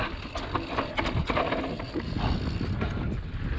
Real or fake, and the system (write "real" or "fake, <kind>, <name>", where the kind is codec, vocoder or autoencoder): real